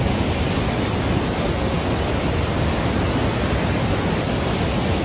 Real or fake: real